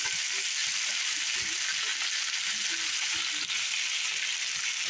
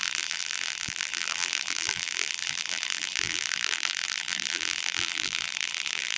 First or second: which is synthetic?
second